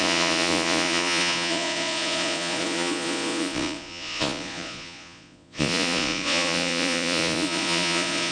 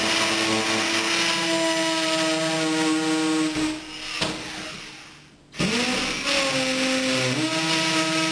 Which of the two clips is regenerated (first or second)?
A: first